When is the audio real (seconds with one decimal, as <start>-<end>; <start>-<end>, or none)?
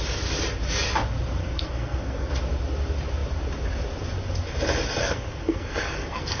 0.0-1.4; 2.4-5.0